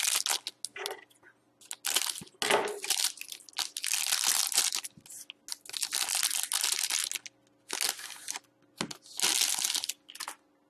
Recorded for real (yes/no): yes